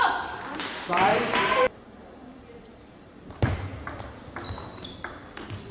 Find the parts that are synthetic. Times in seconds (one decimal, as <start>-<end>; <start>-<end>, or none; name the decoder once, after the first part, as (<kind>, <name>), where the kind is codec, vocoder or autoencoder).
0.0-3.7 (vocoder, BigVGAN v2)